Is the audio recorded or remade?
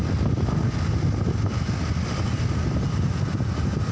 recorded